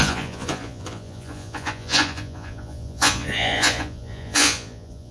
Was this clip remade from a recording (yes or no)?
yes